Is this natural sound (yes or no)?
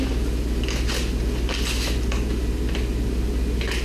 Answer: yes